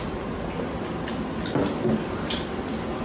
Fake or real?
real